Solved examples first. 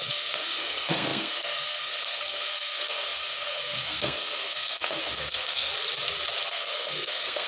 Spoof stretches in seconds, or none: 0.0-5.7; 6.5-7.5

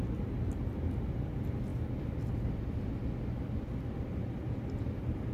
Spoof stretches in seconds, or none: none

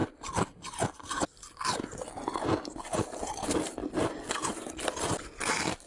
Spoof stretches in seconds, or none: 0.0-3.8; 5.2-5.9

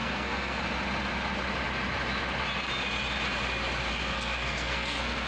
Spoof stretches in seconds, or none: 0.0-0.6; 3.9-5.3

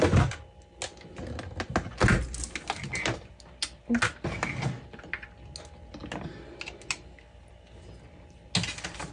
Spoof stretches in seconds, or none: none

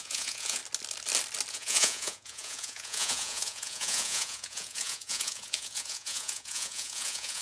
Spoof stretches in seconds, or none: 0.0-0.6; 1.5-7.4

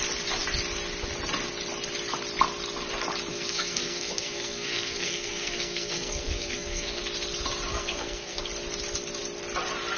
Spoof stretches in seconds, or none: 3.3-7.0; 7.7-8.4